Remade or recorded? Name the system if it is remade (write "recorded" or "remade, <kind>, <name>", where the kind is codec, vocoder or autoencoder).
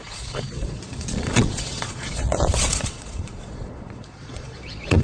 remade, vocoder, Vocos